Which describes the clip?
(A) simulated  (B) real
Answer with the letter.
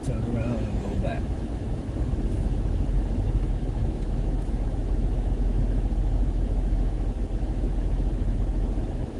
A